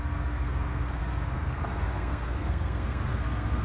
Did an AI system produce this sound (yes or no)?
yes